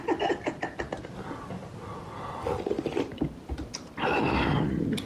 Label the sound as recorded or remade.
recorded